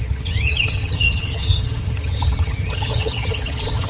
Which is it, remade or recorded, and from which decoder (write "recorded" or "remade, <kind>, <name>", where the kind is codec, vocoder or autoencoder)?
remade, vocoder, HiFi-GAN